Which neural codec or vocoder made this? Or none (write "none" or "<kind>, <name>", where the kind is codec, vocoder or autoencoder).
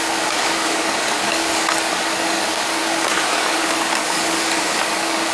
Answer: codec, DAC